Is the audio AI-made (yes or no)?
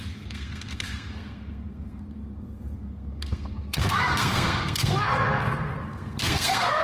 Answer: yes